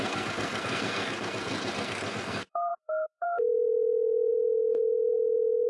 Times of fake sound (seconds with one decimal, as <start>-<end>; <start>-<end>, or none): 0.0-5.7

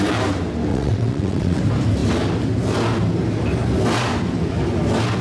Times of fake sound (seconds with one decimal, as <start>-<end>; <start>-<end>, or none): 0.7-1.6

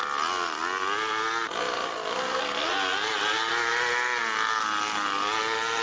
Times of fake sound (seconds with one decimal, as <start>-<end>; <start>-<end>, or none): none

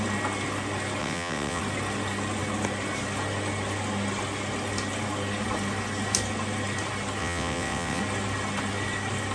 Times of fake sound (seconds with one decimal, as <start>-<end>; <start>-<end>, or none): 1.0-1.6; 7.2-8.0